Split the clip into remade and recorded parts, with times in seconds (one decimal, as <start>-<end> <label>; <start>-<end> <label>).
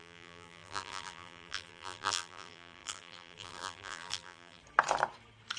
0.0-4.6 remade; 4.6-5.6 recorded